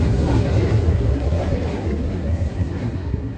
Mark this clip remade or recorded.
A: remade